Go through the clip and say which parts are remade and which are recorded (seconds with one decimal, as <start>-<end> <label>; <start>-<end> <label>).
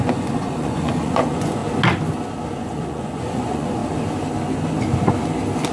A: 0.0-1.6 remade; 1.6-2.6 recorded; 2.6-3.8 remade; 3.8-5.7 recorded